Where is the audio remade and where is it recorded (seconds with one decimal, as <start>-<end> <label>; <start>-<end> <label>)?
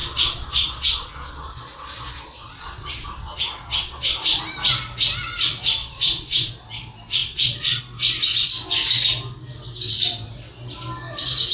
0.0-4.4 remade; 4.4-5.8 recorded; 5.8-6.5 remade; 6.5-7.2 recorded; 7.2-7.8 remade; 7.8-11.5 recorded